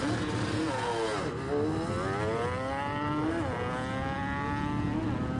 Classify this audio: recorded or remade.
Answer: recorded